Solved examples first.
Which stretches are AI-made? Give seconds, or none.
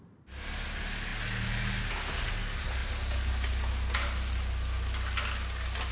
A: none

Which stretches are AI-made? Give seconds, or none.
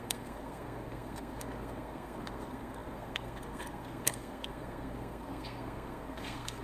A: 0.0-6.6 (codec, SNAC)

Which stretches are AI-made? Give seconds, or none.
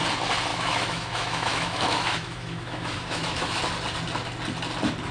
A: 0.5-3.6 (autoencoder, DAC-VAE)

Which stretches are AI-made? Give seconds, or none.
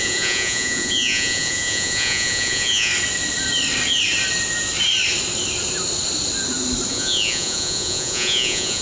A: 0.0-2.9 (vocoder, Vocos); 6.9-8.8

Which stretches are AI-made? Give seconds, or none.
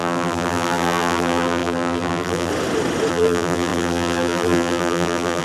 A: 0.0-2.5 (vocoder, BigVGAN v2); 3.1-5.4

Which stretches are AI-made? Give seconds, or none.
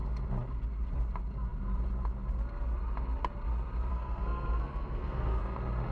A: 3.9-5.4 (codec, SNAC)